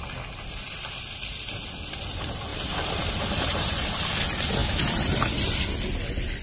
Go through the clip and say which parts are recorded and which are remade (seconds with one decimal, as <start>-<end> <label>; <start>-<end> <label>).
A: 0.0-6.4 recorded